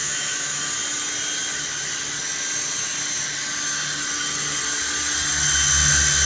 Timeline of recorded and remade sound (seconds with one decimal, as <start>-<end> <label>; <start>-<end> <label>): 0.0-0.6 remade; 0.6-6.2 recorded

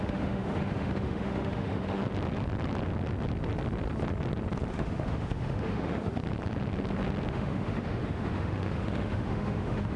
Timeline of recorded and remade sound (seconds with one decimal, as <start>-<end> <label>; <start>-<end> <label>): 0.0-2.0 remade; 2.0-4.7 recorded; 4.7-6.2 remade; 6.2-7.3 recorded; 7.3-10.0 remade